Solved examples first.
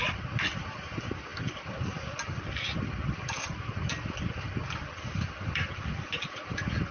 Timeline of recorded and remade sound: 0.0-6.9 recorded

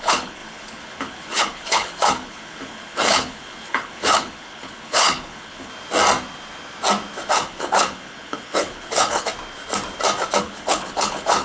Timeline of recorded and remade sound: 0.0-5.7 remade; 5.7-7.3 recorded; 7.3-9.3 remade; 9.3-10.4 recorded; 10.4-11.4 remade

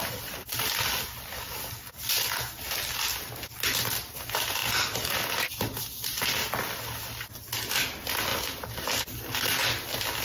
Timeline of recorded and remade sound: 0.0-4.6 recorded; 4.6-6.5 remade; 6.5-8.3 recorded; 8.3-9.7 remade; 9.7-10.2 recorded

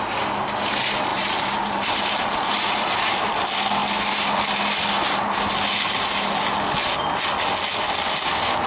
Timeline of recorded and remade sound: 0.0-1.1 recorded; 1.1-3.3 remade; 3.3-8.7 recorded

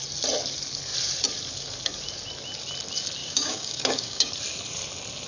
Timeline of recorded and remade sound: 0.0-3.2 recorded; 3.2-4.3 remade; 4.3-5.3 recorded